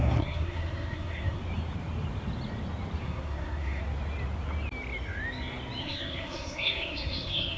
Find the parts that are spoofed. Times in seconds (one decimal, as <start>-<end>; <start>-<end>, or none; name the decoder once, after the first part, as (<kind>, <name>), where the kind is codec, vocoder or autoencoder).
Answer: 0.0-1.4 (codec, SNAC); 3.0-3.8; 5.8-7.6